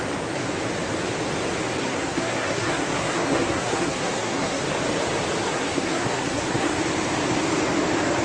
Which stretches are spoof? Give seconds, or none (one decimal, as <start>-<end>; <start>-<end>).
1.8-4.6; 5.4-6.8